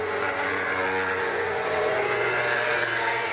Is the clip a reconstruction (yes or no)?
yes